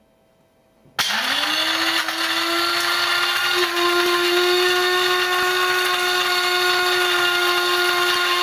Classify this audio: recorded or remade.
recorded